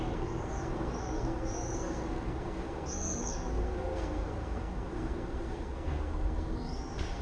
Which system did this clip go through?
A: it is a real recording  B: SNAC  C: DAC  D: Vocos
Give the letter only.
B